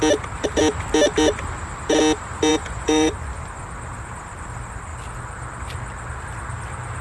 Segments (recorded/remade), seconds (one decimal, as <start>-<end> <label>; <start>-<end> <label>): 0.0-2.5 recorded; 2.5-3.3 remade; 3.3-7.0 recorded